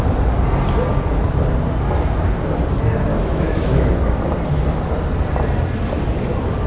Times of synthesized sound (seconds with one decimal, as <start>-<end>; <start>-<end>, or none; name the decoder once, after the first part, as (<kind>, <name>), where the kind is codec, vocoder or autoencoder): 3.1-3.8 (autoencoder, DAC-VAE)